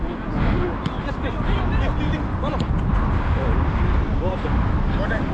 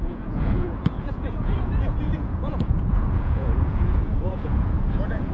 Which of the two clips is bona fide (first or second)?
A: first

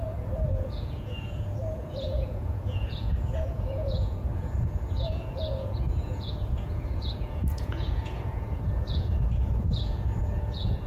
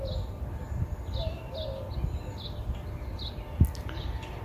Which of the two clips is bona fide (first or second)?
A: second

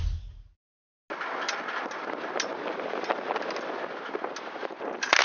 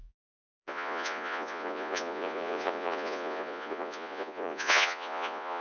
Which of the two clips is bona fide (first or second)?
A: first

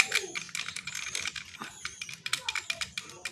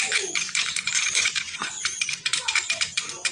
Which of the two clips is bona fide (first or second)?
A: first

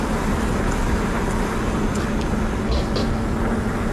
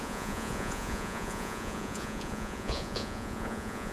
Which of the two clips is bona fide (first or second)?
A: first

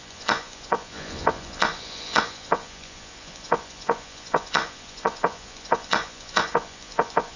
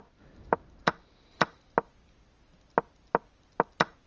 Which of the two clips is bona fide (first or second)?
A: second